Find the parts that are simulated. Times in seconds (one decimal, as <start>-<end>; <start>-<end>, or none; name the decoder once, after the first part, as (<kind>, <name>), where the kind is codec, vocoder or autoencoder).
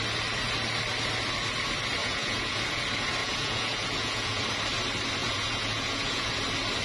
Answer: 2.0-2.8 (vocoder, Vocos); 3.2-4.4; 5.2-6.3